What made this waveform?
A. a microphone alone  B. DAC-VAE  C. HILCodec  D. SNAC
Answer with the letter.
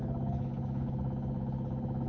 C